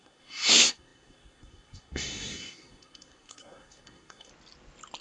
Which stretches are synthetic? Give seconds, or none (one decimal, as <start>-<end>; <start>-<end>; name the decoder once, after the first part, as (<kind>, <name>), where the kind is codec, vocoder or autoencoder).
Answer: 0.0-4.3 (codec, SNAC)